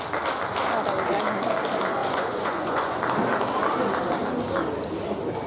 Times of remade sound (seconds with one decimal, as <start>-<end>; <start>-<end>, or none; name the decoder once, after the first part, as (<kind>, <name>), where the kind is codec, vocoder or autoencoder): 2.0-3.0 (vocoder, Vocos)